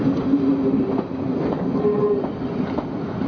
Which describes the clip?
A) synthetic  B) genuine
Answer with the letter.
B